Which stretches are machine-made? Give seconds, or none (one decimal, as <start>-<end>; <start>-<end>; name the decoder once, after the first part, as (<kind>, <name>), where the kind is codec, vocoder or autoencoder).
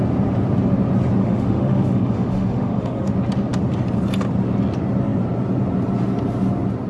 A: 1.2-3.1 (autoencoder, DAC-VAE)